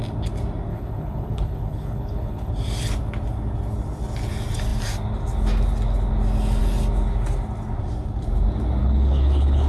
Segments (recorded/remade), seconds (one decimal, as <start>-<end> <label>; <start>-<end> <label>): 0.0-0.7 recorded; 0.7-2.5 remade; 2.5-8.8 recorded; 8.8-9.7 remade